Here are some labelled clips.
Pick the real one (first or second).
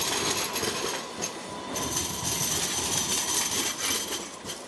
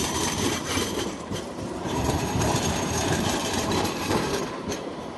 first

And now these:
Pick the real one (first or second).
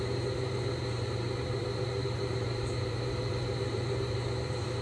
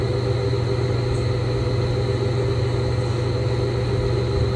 second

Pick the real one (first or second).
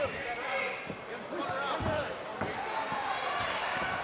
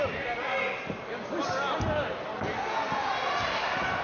second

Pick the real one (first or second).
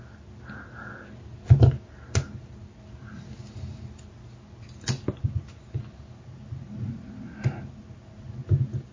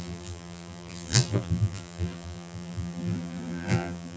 first